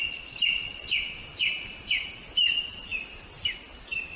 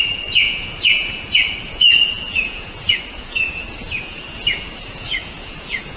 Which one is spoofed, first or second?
second